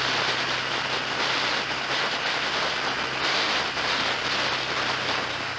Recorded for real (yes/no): yes